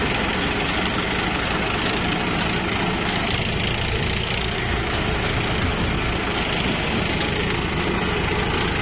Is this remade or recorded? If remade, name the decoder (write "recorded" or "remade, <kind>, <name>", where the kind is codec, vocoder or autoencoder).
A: recorded